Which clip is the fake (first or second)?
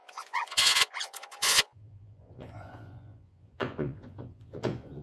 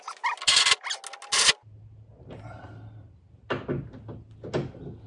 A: first